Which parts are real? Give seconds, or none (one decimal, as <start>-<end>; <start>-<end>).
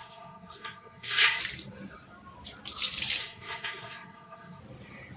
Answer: 1.4-3.2; 4.6-5.2